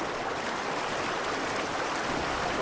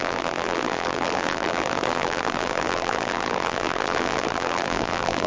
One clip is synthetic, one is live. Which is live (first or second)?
first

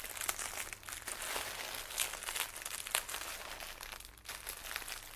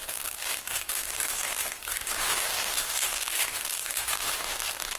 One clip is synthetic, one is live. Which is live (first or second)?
first